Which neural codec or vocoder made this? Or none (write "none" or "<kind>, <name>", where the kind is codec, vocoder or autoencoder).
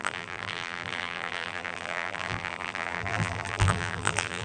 vocoder, BigVGAN v2